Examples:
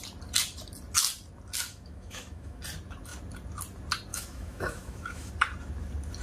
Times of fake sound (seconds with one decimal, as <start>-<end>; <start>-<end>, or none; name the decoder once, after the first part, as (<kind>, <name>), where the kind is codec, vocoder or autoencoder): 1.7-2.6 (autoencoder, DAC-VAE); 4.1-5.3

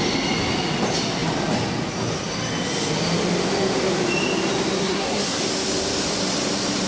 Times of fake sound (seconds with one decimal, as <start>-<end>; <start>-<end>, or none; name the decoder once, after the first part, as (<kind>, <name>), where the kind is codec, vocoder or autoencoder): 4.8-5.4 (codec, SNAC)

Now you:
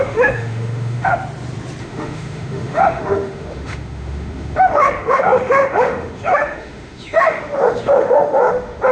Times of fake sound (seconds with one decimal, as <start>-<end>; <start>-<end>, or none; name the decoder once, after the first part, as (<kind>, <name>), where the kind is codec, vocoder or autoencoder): 0.0-1.1 (autoencoder, DAC-VAE); 1.8-8.9

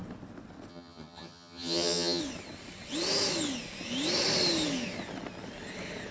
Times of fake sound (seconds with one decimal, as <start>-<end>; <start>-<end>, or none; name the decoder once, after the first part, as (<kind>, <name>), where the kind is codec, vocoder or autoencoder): 0.7-2.2 (vocoder, HiFi-GAN)

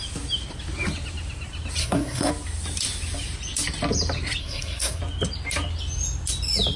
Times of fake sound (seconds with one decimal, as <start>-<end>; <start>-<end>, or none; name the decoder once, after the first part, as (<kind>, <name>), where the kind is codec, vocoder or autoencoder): 1.8-2.3 (codec, SNAC); 4.4-5.0